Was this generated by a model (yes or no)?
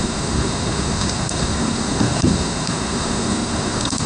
yes